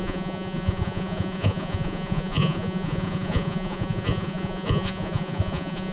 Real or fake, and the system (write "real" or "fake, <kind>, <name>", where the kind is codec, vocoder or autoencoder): fake, vocoder, Vocos